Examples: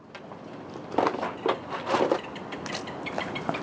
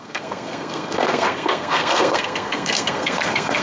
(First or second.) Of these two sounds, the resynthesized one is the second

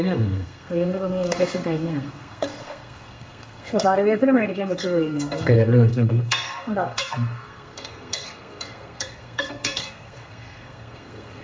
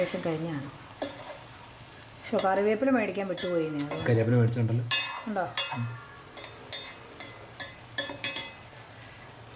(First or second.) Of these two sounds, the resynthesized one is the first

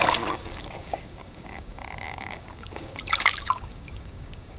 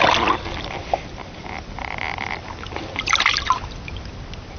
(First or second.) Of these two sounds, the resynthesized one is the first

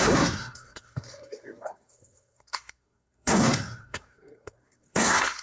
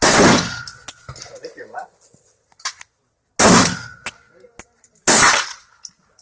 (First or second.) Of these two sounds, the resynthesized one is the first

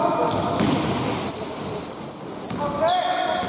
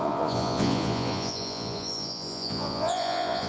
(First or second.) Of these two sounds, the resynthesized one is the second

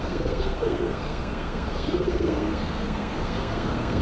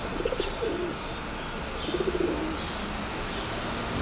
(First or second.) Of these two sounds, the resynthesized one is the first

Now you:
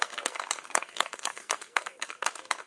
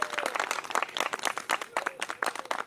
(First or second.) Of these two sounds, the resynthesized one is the first